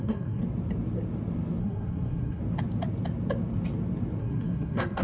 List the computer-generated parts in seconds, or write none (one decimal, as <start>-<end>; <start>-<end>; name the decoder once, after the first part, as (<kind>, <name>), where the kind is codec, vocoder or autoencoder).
0.0-0.4 (codec, SNAC); 1.6-2.4; 4.2-5.0